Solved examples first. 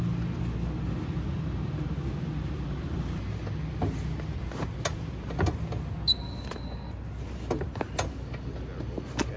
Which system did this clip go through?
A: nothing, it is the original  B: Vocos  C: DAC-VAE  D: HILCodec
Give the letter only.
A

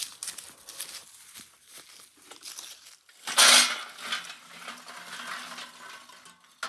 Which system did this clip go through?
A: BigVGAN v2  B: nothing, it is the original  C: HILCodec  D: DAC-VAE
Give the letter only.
B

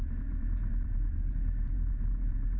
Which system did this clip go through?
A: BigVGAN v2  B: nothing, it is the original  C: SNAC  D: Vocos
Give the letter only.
A